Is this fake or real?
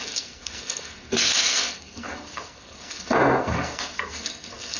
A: fake